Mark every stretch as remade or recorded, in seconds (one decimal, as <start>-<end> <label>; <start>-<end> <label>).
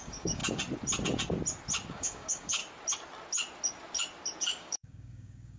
0.0-0.4 remade; 0.4-1.9 recorded; 1.9-2.6 remade; 2.6-4.4 recorded; 4.4-5.6 remade